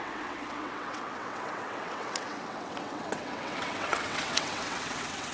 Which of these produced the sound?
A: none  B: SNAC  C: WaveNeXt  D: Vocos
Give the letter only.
C